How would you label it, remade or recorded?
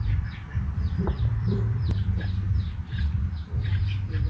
remade